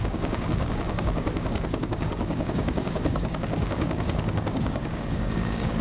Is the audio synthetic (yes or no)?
yes